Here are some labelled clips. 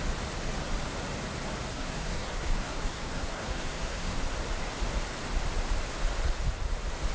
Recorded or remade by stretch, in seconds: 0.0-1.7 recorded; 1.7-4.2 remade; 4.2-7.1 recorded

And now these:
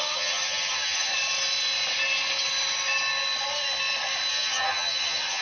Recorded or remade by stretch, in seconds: 0.0-1.1 remade; 1.1-4.3 recorded; 4.3-5.4 remade

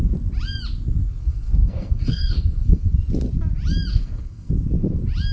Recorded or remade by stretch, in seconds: 0.0-1.0 recorded; 1.0-2.9 remade; 2.9-3.9 recorded; 3.9-4.5 remade; 4.5-5.3 recorded